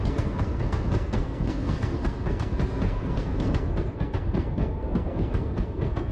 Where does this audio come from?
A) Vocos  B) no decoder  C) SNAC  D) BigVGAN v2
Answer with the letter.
C